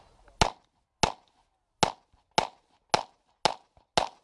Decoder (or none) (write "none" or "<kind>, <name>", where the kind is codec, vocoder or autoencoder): none